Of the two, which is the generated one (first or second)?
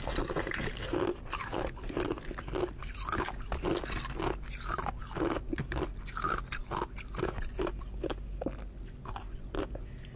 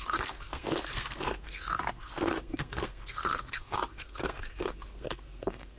second